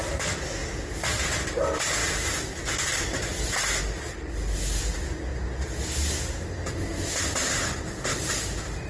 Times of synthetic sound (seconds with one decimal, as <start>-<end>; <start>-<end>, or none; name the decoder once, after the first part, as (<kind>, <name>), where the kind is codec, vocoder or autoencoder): none

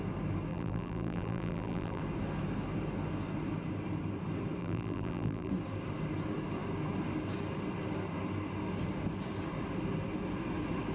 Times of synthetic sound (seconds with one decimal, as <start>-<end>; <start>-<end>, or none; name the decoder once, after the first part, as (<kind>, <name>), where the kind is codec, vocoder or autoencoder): 0.5-2.0 (vocoder, BigVGAN v2); 4.6-5.5

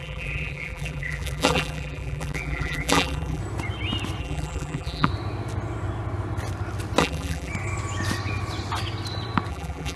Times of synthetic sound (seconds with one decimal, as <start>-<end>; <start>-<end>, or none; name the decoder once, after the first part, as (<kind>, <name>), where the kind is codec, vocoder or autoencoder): 0.0-3.4 (vocoder, BigVGAN v2); 4.2-5.1; 7.0-7.5; 9.5-10.0

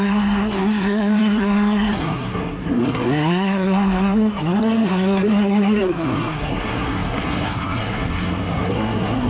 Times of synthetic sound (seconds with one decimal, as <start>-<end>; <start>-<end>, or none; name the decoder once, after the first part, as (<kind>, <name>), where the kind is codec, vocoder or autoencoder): 0.0-9.3 (codec, SNAC)